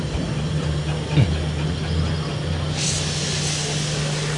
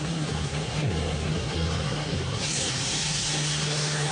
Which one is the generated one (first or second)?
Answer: second